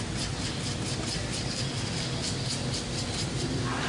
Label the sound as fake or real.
real